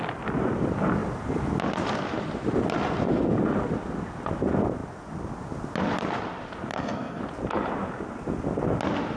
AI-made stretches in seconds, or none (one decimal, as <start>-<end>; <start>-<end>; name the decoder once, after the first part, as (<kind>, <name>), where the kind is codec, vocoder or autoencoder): 6.7-7.2 (codec, SNAC)